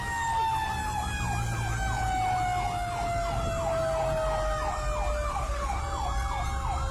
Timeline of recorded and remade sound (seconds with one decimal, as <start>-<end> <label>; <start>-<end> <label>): 0.0-5.3 recorded; 5.3-5.8 remade; 5.8-6.9 recorded